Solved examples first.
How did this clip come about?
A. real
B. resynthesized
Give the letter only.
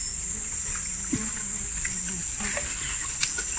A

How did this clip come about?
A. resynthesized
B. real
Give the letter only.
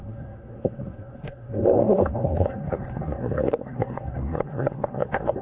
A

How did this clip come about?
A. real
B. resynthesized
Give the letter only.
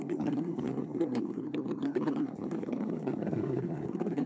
B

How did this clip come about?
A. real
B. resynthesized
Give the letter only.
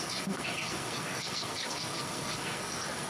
B